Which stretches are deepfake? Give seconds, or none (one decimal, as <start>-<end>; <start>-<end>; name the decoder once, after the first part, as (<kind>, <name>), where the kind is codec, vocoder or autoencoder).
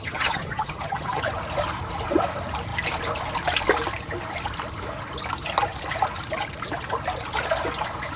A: 0.0-1.3 (vocoder, HiFi-GAN)